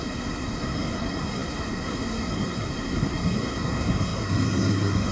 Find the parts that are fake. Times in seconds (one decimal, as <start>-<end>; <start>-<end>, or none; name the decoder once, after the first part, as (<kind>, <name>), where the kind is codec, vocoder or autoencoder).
0.0-5.1 (codec, SNAC)